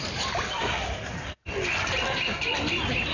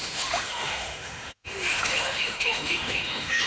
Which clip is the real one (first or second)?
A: first